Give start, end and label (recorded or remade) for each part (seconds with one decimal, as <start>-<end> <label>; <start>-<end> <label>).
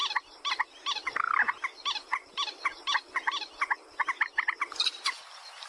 0.0-5.7 recorded